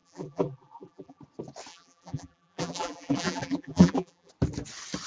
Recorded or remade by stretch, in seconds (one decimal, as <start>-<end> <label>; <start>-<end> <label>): 0.0-1.2 remade; 1.2-1.7 recorded; 1.7-4.3 remade; 4.3-5.1 recorded